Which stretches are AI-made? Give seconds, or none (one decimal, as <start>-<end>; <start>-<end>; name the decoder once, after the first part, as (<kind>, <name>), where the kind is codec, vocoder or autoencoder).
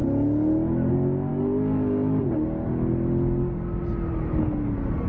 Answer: none